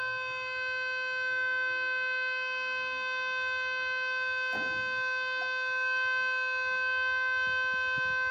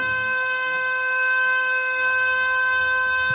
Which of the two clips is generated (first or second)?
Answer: second